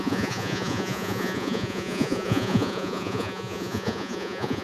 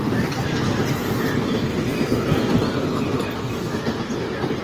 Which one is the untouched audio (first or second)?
second